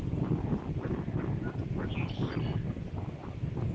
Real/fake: real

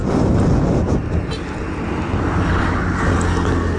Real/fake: real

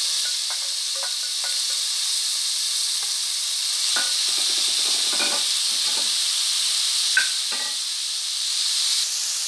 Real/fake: real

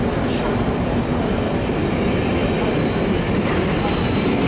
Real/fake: real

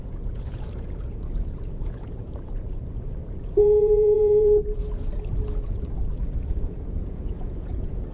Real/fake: fake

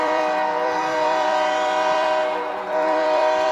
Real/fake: fake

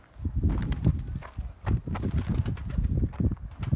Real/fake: real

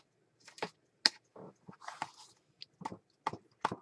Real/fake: real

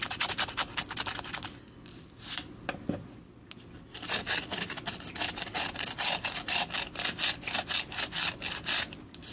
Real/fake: real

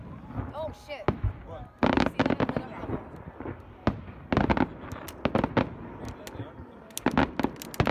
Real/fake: real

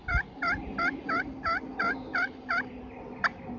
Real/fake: real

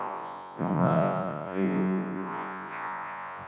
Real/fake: fake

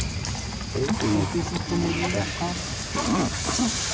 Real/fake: real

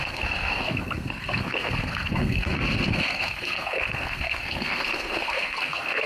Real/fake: fake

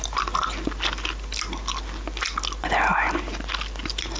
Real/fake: real